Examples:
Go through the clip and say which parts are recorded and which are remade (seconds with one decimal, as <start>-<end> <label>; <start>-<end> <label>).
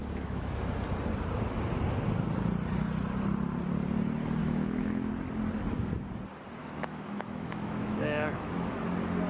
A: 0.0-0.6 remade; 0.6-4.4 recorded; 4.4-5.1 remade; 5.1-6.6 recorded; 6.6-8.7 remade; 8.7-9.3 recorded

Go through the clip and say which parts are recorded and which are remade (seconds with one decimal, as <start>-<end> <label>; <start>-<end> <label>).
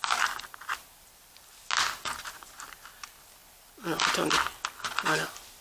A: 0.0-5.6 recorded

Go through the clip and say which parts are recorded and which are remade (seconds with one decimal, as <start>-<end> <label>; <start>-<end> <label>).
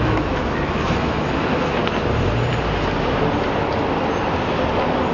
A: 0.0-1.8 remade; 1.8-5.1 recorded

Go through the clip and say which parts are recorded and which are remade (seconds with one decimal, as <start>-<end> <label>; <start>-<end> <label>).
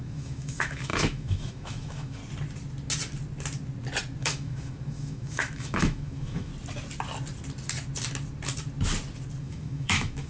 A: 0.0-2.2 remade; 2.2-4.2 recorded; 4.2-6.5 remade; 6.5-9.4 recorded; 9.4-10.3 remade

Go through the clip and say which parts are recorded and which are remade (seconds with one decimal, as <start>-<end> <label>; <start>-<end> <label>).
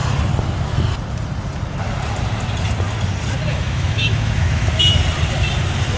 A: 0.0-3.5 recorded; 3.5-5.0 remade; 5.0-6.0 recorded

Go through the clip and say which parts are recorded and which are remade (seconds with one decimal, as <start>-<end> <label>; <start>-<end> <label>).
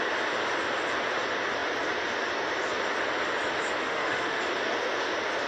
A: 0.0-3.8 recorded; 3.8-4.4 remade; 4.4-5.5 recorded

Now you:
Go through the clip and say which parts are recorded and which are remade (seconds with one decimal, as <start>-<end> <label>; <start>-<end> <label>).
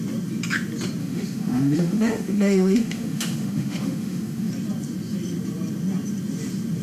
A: 0.0-1.0 recorded; 1.0-4.5 remade; 4.5-6.8 recorded